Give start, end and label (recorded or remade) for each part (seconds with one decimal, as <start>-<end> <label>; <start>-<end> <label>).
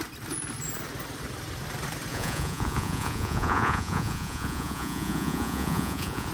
0.0-2.1 recorded; 2.1-6.3 remade